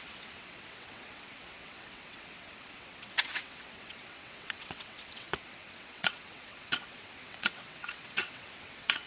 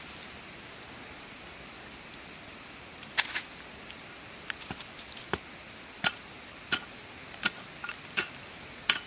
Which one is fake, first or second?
first